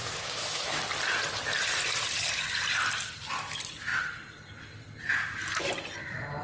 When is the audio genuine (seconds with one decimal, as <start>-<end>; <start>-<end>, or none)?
0.8-6.4